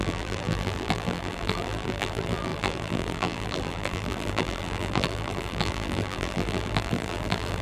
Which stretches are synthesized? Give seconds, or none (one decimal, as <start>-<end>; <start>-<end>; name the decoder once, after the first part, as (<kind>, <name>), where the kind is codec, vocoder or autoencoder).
0.0-7.6 (vocoder, BigVGAN v2)